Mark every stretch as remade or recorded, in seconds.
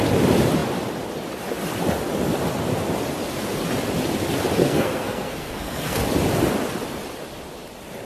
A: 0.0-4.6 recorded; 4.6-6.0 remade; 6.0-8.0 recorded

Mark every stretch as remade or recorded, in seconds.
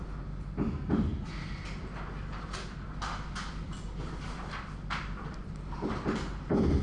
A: 0.0-6.8 recorded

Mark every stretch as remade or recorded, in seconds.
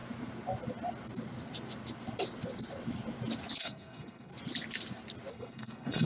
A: 0.0-3.6 recorded; 3.6-4.3 remade; 4.3-5.3 recorded; 5.3-6.0 remade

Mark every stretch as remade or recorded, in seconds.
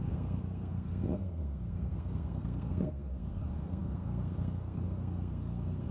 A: 0.0-5.9 remade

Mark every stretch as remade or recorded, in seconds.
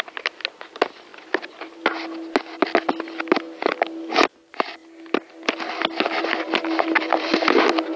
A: 0.0-8.0 recorded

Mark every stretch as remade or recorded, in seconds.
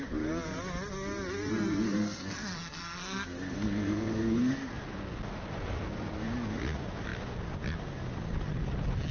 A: 0.0-1.5 recorded; 1.5-4.7 remade; 4.7-9.1 recorded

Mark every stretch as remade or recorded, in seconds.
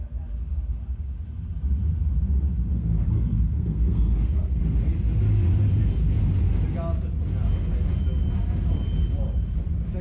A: 0.0-2.7 recorded; 2.7-4.6 remade; 4.6-10.0 recorded